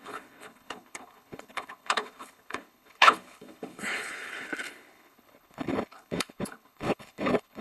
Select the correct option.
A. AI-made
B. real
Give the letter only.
A